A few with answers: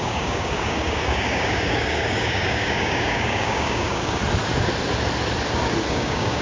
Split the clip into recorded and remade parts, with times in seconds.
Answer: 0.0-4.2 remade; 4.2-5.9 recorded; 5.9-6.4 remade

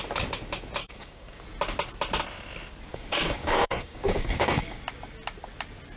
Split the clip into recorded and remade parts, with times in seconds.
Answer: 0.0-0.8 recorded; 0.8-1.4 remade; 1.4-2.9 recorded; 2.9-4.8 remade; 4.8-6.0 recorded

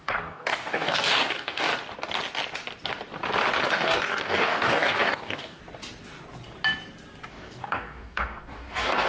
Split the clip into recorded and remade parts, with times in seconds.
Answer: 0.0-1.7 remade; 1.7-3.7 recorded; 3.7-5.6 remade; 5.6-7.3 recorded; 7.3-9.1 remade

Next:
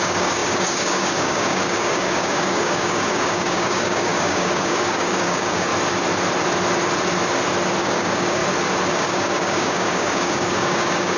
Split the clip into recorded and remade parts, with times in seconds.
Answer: 0.0-5.7 remade; 5.7-7.8 recorded; 7.8-8.4 remade; 8.4-8.9 recorded; 8.9-11.2 remade

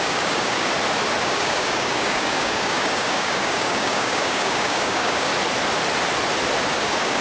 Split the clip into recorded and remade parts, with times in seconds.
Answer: 0.0-0.7 remade; 0.7-1.2 recorded; 1.2-5.3 remade; 5.3-6.7 recorded; 6.7-7.2 remade

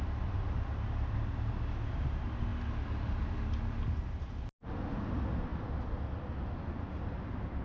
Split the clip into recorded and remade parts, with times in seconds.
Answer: 0.0-7.6 recorded